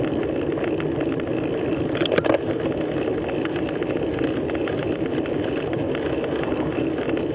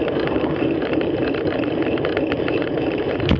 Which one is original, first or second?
first